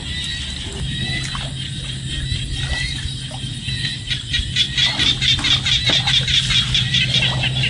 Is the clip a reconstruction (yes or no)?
no